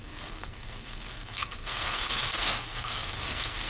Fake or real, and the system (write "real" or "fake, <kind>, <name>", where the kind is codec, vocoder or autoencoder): fake, codec, SNAC